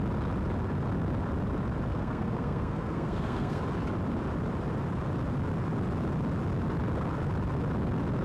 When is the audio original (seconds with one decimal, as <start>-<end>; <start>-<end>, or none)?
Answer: 0.0-1.9; 3.6-8.2